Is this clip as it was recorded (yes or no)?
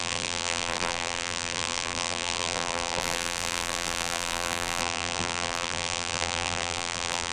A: no